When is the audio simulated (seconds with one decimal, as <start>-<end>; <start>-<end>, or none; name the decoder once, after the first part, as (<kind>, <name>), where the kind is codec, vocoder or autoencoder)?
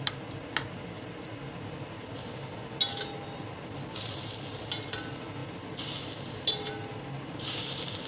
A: none